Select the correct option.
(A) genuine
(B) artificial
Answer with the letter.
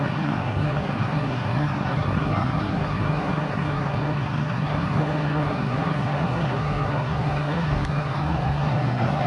B